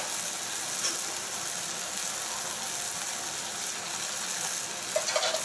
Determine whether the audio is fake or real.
real